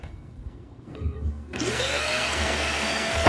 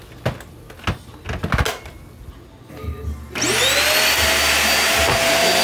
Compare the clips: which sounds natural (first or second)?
second